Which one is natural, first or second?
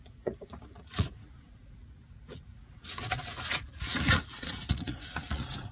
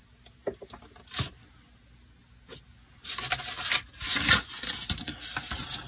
second